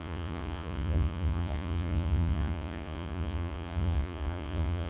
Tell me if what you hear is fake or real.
fake